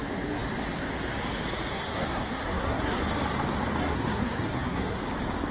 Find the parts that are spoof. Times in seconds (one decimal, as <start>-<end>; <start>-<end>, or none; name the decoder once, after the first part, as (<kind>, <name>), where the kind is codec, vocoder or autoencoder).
1.7-3.0 (codec, SNAC); 3.8-5.0